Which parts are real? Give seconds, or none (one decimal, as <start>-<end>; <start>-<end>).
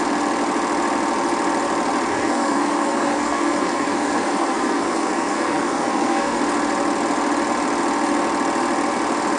0.0-2.1; 6.4-9.4